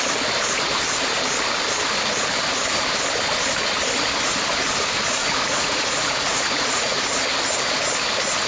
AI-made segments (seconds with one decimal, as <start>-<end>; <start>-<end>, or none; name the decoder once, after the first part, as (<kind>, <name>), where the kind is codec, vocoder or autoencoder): 5.2-7.0 (vocoder, Vocos)